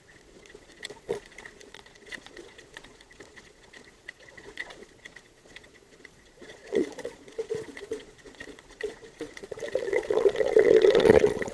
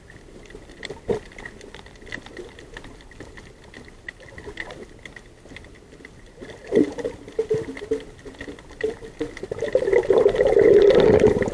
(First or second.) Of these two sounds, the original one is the second